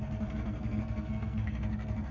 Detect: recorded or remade remade